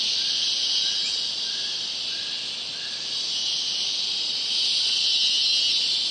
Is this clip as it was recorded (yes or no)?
yes